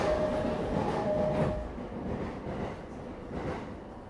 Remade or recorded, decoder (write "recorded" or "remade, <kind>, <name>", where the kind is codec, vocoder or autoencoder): recorded